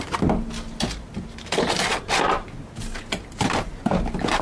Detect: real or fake real